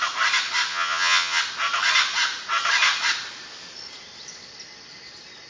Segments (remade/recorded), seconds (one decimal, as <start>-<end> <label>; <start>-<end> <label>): 0.0-0.7 recorded; 0.7-1.4 remade; 1.4-5.5 recorded

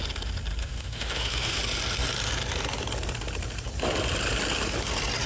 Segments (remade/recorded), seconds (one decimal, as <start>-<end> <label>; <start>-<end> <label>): 0.0-0.6 recorded; 0.6-1.6 remade; 1.6-5.3 recorded

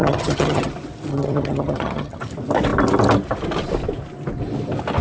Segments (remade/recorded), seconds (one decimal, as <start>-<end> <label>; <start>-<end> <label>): 0.0-0.7 remade; 0.7-1.1 recorded; 1.1-2.2 remade; 2.2-5.0 recorded

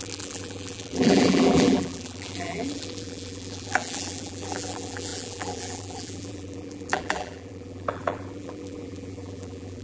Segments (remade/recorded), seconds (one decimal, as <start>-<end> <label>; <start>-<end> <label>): 0.0-9.8 remade

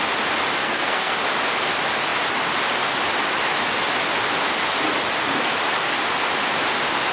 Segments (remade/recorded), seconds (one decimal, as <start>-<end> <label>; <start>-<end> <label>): 0.0-0.6 recorded; 0.6-1.2 remade; 1.2-7.1 recorded

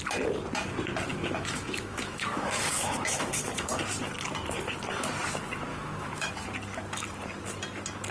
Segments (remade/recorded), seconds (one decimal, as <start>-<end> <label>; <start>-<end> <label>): 0.0-1.1 recorded; 1.1-3.7 remade; 3.7-5.7 recorded; 5.7-6.3 remade; 6.3-8.1 recorded